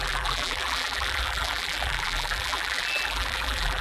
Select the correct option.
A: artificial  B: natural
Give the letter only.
A